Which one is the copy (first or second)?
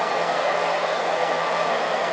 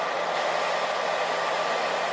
first